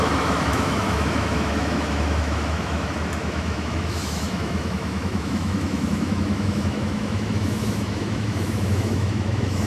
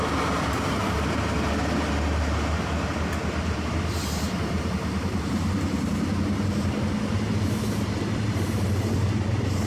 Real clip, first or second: second